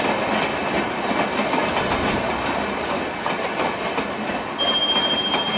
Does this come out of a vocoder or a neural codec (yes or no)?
no